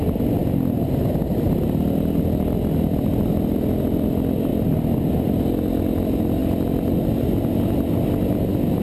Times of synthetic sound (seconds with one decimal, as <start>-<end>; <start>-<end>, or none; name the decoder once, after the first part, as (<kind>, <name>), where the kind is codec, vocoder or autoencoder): none